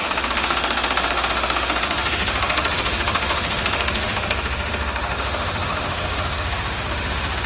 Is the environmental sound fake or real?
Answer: fake